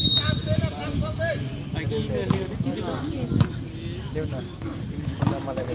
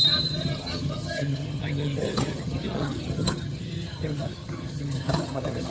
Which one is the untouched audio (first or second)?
first